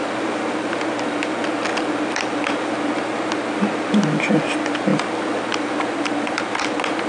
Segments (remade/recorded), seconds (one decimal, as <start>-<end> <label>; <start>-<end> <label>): 0.0-7.1 recorded